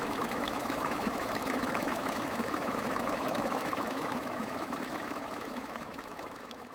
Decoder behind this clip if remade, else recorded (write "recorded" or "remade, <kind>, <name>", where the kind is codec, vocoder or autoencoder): remade, autoencoder, DAC-VAE